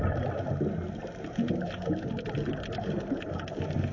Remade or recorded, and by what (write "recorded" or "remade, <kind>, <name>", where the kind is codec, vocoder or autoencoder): recorded